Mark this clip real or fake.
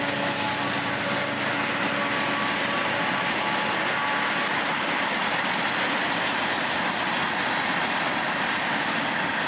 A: real